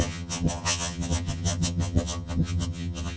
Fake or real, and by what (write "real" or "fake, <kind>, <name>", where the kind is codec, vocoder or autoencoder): fake, vocoder, HiFi-GAN